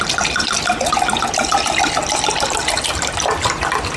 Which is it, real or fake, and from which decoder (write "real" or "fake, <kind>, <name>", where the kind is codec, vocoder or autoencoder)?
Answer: real